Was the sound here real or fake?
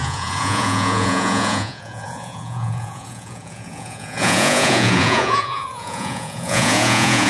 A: fake